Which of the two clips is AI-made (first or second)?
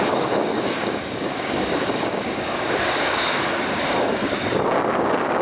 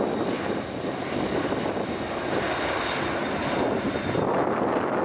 first